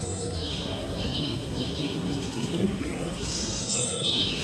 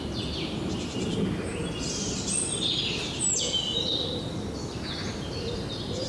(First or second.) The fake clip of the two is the first